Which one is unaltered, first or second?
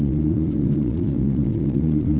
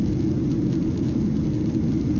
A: second